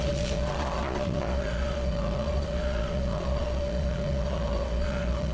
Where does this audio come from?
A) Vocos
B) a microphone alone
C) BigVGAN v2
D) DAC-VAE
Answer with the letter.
A